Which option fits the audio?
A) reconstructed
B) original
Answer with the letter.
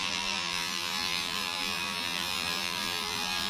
A